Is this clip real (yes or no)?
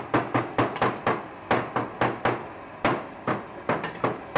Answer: yes